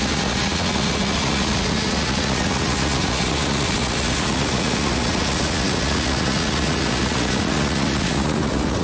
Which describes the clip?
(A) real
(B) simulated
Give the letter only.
B